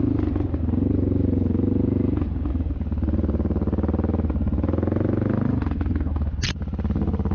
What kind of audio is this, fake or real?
real